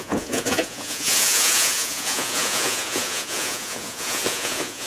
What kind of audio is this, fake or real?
fake